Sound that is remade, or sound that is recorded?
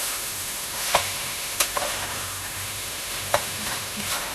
remade